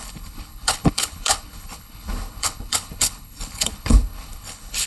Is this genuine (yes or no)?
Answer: no